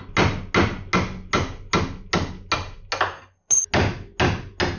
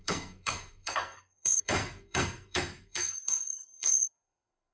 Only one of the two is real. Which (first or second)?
first